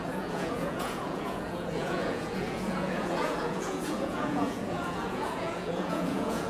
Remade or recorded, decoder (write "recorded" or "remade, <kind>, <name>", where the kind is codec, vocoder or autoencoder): remade, vocoder, Vocos